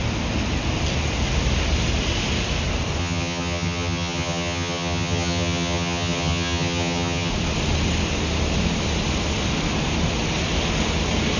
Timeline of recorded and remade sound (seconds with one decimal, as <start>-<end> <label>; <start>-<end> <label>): 0.0-3.0 recorded; 3.0-7.3 remade; 7.3-11.4 recorded